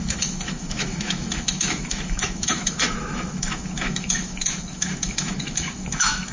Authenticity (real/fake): fake